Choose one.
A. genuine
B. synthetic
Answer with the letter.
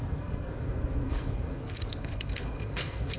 B